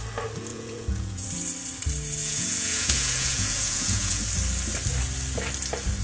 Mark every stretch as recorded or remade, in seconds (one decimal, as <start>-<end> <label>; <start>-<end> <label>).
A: 0.0-0.5 recorded; 0.5-1.3 remade; 1.3-2.2 recorded; 2.2-4.2 remade; 4.2-6.0 recorded

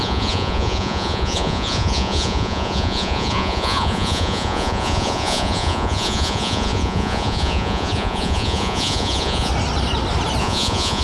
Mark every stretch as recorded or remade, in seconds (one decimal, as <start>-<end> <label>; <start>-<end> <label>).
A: 0.0-9.5 remade; 9.5-10.4 recorded; 10.4-11.0 remade